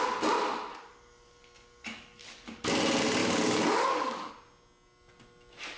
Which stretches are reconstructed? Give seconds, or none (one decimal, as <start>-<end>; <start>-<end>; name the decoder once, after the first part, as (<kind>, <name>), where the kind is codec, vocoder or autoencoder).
0.7-2.7 (codec, DAC); 3.2-4.3